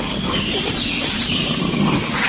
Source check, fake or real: real